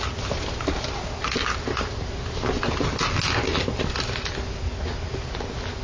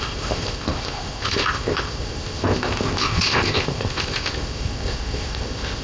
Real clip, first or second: first